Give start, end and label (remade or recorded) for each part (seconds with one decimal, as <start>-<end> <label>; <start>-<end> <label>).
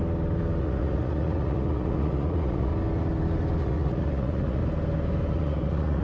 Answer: 0.0-0.6 recorded; 0.6-2.7 remade; 2.7-3.6 recorded; 3.6-4.6 remade; 4.6-5.3 recorded; 5.3-6.0 remade